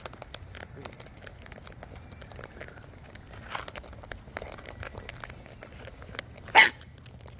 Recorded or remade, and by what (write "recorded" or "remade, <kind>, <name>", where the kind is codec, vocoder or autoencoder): recorded